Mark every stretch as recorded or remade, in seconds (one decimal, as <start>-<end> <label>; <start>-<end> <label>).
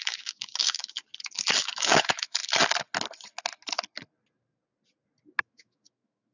0.0-1.0 remade; 1.0-1.6 recorded; 1.6-2.4 remade; 2.4-5.4 recorded; 5.4-6.3 remade